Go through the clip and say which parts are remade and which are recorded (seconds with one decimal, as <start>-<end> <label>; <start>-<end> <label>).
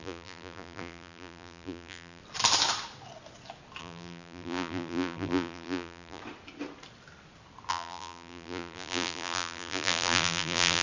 0.0-2.2 remade; 2.2-3.8 recorded; 3.8-6.2 remade; 6.2-7.7 recorded; 7.7-10.8 remade